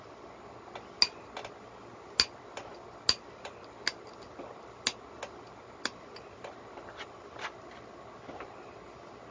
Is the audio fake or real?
real